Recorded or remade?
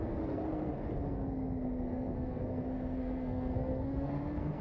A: remade